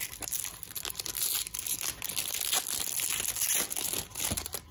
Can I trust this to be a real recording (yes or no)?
yes